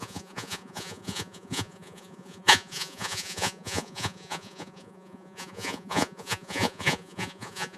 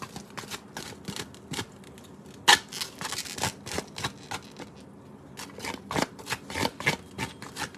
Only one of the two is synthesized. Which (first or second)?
first